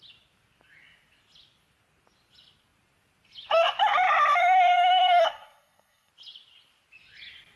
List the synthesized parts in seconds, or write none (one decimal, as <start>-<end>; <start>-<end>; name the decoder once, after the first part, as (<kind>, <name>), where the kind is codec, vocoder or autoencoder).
4.4-6.1 (codec, SNAC)